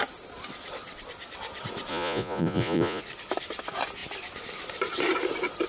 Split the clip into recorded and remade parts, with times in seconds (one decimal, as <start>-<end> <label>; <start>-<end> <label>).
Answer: 0.0-1.9 recorded; 1.9-3.0 remade; 3.0-5.7 recorded